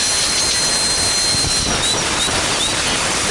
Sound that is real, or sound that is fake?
real